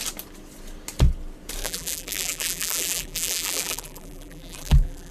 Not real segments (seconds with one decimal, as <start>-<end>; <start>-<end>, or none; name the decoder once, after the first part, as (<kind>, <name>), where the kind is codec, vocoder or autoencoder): 1.6-5.1 (vocoder, BigVGAN v2)